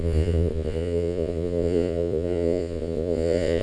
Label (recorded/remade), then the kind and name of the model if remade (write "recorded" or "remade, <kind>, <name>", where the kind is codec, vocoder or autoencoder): remade, vocoder, Vocos